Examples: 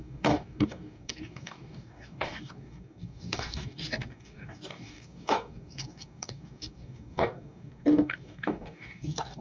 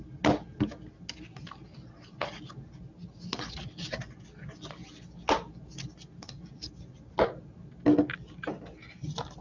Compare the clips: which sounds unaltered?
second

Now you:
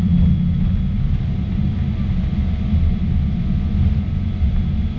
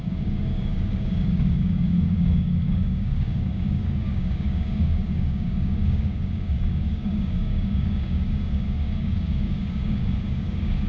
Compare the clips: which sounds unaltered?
first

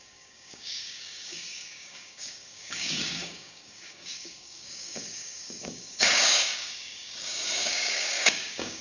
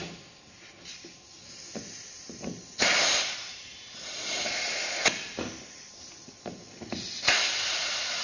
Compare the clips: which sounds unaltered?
second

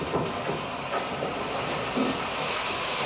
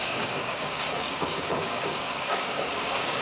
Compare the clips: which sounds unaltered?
first